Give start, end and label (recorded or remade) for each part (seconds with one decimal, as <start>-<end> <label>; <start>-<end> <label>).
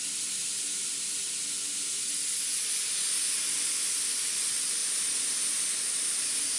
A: 0.0-0.4 recorded; 0.4-1.3 remade; 1.3-4.8 recorded; 4.8-6.6 remade